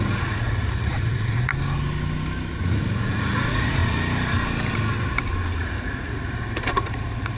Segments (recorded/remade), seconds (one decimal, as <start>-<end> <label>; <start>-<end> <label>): 0.0-1.5 remade; 1.5-2.6 recorded; 2.6-3.8 remade; 3.8-5.6 recorded; 5.6-7.4 remade